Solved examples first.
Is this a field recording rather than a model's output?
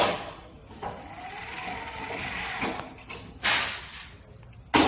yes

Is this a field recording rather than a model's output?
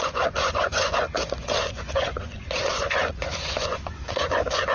no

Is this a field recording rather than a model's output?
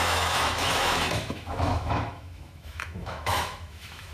no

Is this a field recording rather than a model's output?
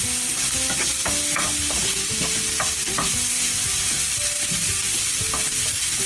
yes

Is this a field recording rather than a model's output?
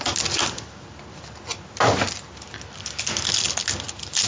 yes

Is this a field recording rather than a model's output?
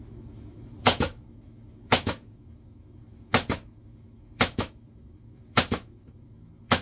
no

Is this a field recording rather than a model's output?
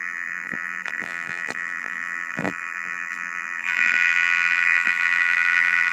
no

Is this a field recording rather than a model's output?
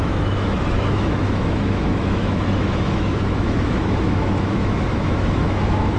no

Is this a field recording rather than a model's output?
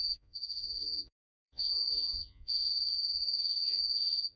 no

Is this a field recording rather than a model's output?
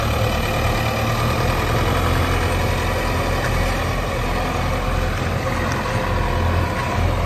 yes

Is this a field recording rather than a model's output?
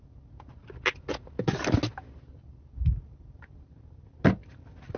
yes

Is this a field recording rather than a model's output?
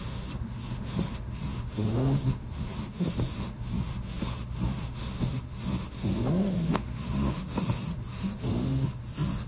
no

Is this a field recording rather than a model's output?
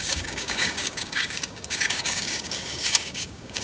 no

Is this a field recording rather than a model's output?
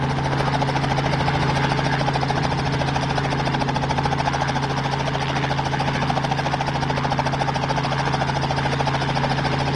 yes